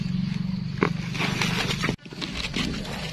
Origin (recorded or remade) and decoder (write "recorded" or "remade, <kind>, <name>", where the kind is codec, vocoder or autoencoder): recorded